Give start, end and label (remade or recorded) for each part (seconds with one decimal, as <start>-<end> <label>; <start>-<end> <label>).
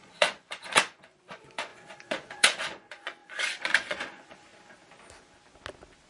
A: 0.0-4.5 remade; 4.5-6.1 recorded